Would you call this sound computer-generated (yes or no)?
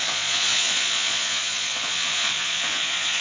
yes